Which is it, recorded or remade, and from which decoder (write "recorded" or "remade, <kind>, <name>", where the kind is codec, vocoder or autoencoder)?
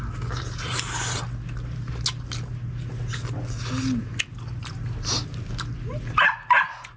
recorded